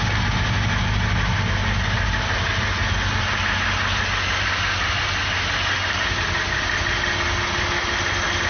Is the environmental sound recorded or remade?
recorded